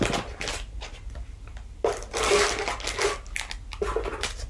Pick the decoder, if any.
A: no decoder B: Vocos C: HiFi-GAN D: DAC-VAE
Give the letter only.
A